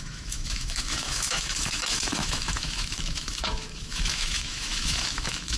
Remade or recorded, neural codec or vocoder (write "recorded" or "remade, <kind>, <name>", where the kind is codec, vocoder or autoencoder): remade, autoencoder, DAC-VAE